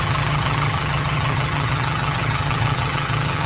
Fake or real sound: fake